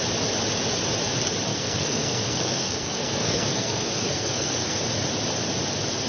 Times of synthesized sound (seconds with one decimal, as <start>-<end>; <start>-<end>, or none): 1.5-4.8